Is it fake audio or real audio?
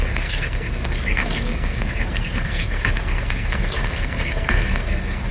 fake